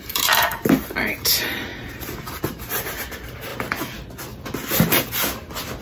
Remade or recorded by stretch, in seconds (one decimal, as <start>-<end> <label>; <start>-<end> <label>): 0.0-3.5 remade; 3.5-5.8 recorded